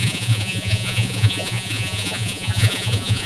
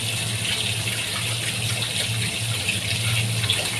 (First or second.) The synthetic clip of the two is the first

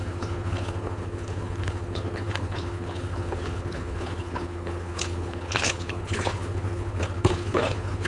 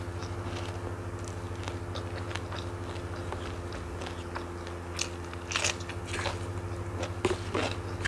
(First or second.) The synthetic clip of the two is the first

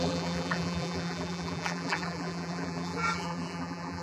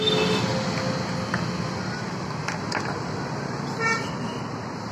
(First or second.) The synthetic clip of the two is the first